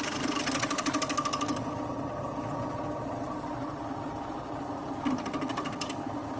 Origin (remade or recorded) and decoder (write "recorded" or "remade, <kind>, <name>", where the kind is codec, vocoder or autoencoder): recorded